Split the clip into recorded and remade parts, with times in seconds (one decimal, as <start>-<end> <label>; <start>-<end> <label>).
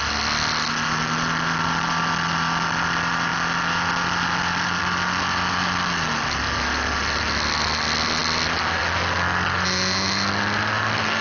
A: 0.0-11.2 recorded